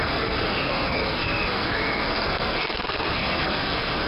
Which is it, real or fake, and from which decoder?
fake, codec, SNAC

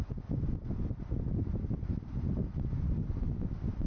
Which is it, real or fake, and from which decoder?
real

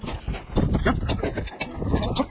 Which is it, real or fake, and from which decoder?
real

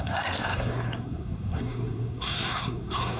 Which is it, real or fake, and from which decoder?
fake, codec, SNAC